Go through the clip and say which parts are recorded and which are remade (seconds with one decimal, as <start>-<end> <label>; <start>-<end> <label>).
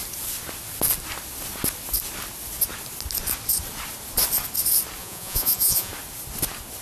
0.0-5.0 recorded; 5.0-5.9 remade; 5.9-6.8 recorded